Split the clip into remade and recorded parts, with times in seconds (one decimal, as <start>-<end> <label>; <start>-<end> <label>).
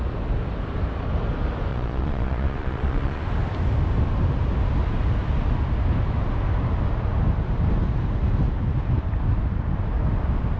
0.0-1.7 recorded; 1.7-3.2 remade; 3.2-10.6 recorded